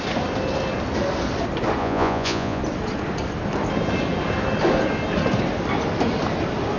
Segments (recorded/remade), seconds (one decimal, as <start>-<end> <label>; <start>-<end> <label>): 0.0-1.8 recorded; 1.8-2.6 remade; 2.6-6.8 recorded